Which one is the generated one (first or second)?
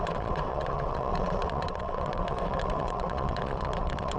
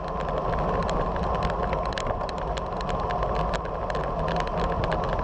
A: first